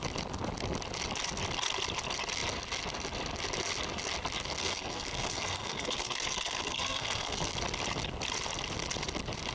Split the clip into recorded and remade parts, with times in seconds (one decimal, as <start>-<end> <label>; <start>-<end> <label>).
0.0-4.6 recorded; 4.6-7.5 remade; 7.5-9.5 recorded